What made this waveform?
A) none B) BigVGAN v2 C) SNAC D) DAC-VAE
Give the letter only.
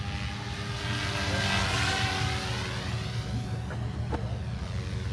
A